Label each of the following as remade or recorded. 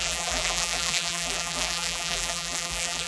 remade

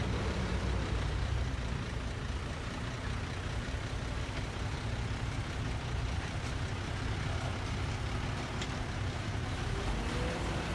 remade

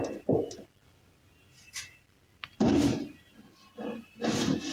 remade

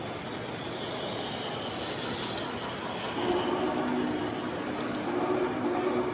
recorded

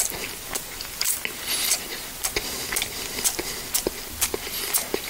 recorded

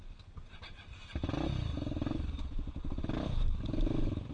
recorded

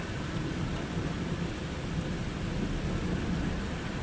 recorded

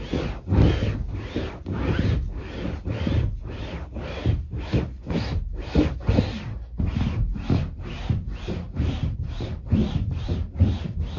recorded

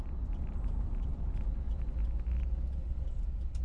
recorded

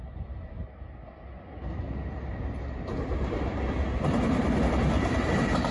recorded